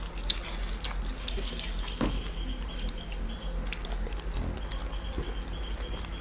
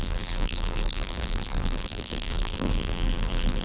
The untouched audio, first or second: first